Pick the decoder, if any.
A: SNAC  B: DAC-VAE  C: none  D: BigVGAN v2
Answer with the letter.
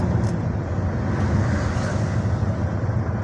C